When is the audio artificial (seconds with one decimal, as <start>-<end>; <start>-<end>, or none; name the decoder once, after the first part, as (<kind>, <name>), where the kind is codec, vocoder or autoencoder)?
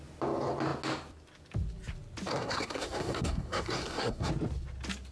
2.3-4.3 (codec, SNAC)